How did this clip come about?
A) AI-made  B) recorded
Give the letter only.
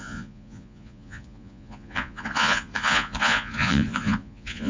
A